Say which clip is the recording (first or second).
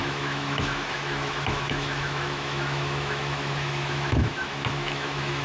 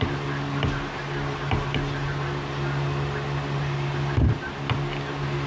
second